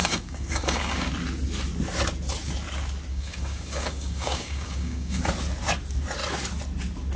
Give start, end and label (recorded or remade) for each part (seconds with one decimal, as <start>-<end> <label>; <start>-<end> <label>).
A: 0.0-1.1 remade; 1.1-3.1 recorded; 3.1-5.2 remade; 5.2-7.2 recorded